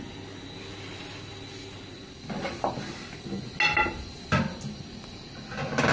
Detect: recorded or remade recorded